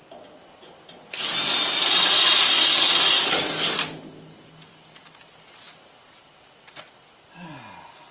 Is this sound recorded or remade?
recorded